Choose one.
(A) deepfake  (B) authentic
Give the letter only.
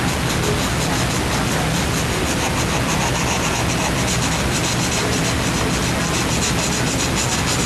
B